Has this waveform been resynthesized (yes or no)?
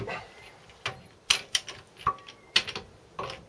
no